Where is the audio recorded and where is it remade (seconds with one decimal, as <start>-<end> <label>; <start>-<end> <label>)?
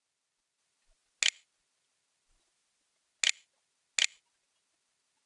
0.0-5.3 recorded